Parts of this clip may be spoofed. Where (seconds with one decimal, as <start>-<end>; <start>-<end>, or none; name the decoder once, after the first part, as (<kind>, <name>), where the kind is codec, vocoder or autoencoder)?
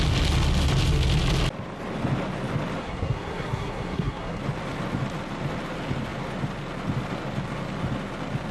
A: 2.8-4.4 (codec, SNAC)